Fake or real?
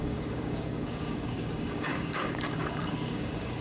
fake